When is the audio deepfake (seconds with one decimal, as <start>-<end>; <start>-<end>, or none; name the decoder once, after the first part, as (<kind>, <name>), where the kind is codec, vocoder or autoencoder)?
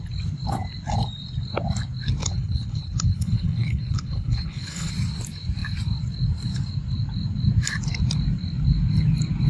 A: 2.2-4.9 (codec, HILCodec)